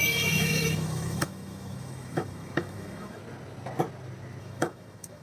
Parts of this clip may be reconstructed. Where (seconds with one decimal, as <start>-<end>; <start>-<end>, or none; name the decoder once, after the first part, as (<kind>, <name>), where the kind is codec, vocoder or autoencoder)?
0.0-3.2 (autoencoder, DAC-VAE); 4.4-5.2